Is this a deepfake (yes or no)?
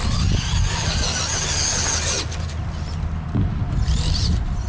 no